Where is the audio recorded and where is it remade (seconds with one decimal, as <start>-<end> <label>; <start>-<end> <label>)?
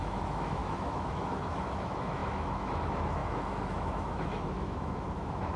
0.0-5.6 remade